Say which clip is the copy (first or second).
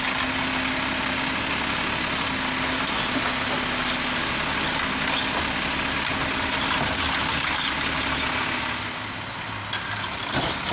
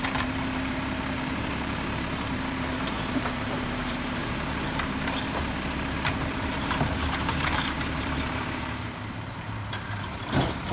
second